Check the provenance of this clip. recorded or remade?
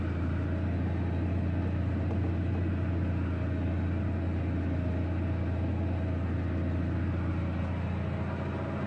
recorded